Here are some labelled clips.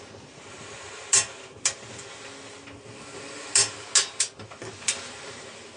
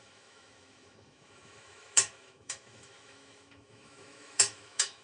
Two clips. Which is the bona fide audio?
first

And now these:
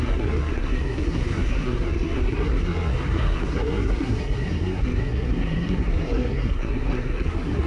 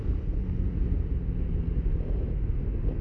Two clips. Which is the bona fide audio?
second